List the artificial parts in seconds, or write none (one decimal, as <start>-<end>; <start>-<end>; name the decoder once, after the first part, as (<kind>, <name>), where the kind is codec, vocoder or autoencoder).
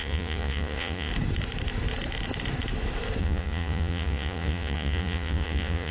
0.0-1.1 (vocoder, Vocos); 3.2-5.9